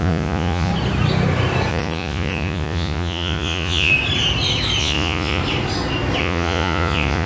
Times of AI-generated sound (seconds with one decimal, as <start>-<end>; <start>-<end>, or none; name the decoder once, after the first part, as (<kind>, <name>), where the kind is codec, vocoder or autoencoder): 0.0-0.7 (vocoder, Vocos); 1.7-3.9; 4.8-5.4; 6.2-7.3